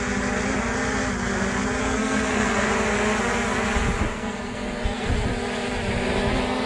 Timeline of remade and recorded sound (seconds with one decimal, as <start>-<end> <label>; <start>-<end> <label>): 0.0-1.8 recorded; 1.8-2.7 remade; 2.7-4.1 recorded; 4.1-5.1 remade; 5.1-6.7 recorded